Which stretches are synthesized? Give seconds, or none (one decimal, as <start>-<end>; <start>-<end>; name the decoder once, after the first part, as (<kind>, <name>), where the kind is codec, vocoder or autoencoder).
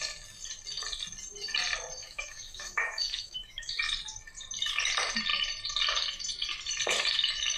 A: 2.0-3.8 (autoencoder, DAC-VAE)